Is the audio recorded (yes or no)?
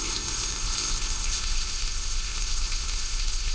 no